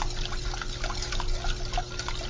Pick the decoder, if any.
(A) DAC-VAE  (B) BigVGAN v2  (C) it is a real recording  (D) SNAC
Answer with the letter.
C